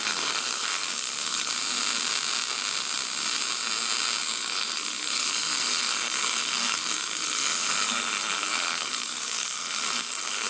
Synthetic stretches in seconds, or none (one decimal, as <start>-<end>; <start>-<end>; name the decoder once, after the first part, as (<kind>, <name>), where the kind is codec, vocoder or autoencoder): 0.0-1.5 (codec, SNAC); 4.2-10.5